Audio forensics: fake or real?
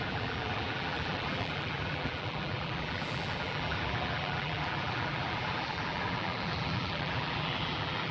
fake